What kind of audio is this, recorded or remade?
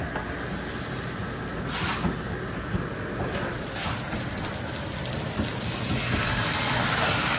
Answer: recorded